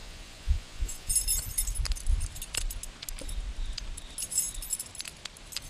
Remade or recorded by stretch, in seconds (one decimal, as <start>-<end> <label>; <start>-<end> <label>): 0.0-1.1 remade; 1.1-5.7 recorded